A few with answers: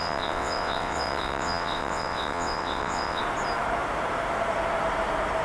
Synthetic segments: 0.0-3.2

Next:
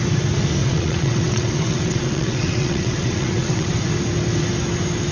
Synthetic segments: 0.6-3.7

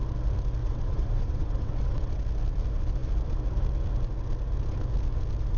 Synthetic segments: 0.6-2.2